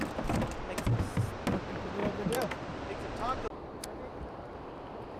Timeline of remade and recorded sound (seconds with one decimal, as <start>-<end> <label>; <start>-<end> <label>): 0.0-5.2 recorded